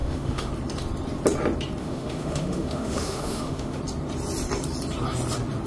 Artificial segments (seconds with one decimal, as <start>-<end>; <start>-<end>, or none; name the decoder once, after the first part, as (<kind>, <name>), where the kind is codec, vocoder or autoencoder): 0.0-0.5 (autoencoder, DAC-VAE); 1.8-3.8